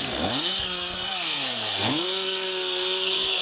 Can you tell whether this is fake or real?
fake